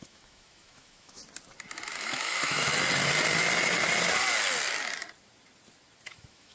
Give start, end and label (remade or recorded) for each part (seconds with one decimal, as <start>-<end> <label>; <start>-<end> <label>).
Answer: 0.0-1.2 remade; 1.2-2.0 recorded; 2.0-2.7 remade; 2.7-6.1 recorded; 6.1-6.5 remade